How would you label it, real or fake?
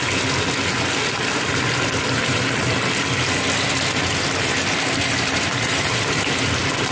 real